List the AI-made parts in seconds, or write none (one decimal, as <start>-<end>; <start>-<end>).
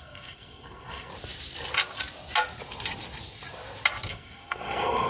0.0-1.1; 4.1-5.1